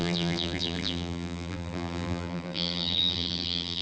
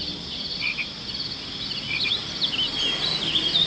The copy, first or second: first